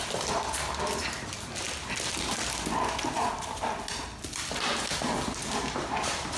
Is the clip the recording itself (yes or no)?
yes